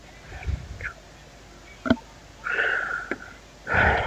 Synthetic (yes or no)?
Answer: no